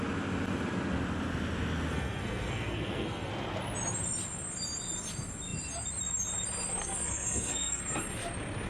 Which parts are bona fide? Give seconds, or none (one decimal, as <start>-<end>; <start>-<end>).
0.0-1.9; 3.3-6.8; 7.8-8.7